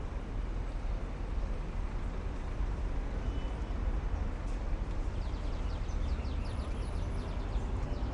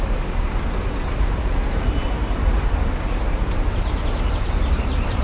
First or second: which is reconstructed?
second